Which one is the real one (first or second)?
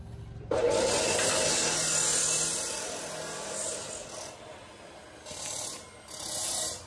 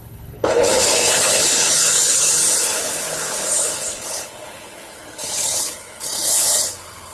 first